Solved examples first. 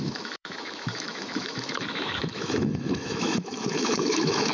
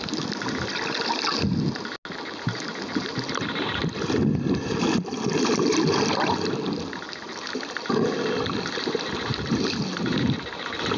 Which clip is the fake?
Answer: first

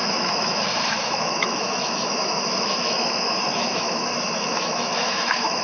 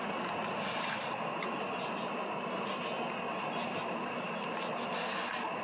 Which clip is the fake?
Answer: first